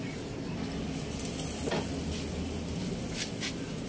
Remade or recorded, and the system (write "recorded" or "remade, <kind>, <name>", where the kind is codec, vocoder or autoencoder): recorded